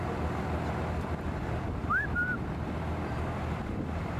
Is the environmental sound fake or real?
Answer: fake